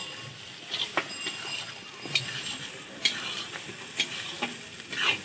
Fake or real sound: real